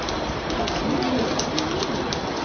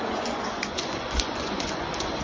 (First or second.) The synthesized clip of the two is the second